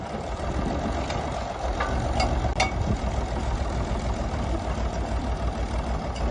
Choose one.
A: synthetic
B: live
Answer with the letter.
B